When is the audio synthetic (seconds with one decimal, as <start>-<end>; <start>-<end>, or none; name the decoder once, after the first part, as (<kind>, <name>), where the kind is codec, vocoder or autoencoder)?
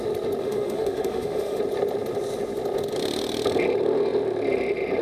0.4-1.6 (autoencoder, DAC-VAE)